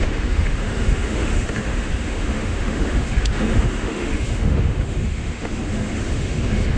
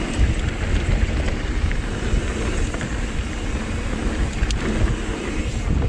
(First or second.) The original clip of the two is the second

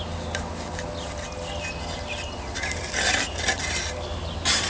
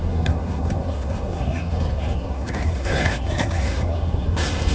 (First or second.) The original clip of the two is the first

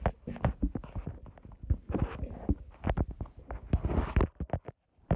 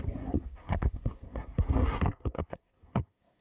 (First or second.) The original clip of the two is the first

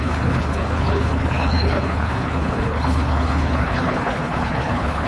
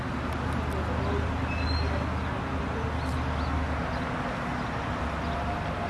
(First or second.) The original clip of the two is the second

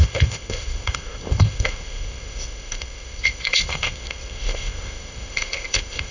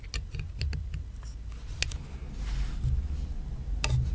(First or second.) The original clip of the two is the second